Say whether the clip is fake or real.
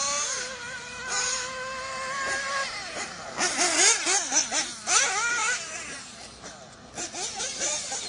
real